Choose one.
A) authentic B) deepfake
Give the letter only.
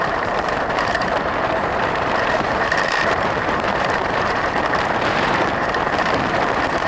B